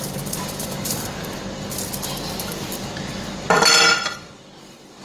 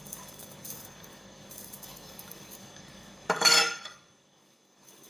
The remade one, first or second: second